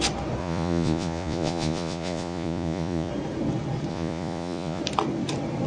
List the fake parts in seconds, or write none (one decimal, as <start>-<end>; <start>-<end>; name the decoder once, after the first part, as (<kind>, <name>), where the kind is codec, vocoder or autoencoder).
0.4-3.1 (vocoder, Vocos); 3.9-4.8